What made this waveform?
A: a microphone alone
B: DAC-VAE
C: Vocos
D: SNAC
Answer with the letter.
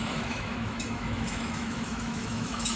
B